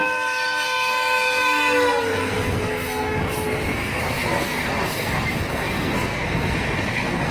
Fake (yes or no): yes